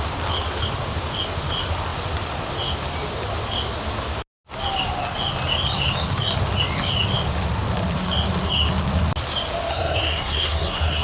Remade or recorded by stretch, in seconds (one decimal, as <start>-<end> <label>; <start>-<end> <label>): 0.0-9.7 recorded; 9.7-11.0 remade